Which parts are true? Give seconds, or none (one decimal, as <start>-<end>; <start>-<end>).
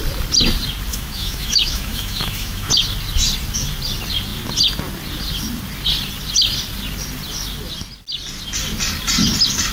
0.0-0.9; 2.7-9.7